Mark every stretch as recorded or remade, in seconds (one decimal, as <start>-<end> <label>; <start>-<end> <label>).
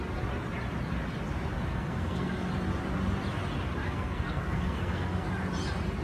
0.0-1.7 recorded; 1.7-2.5 remade; 2.5-3.8 recorded; 3.8-5.3 remade; 5.3-6.0 recorded